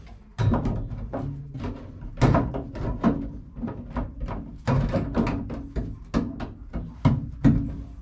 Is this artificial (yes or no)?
no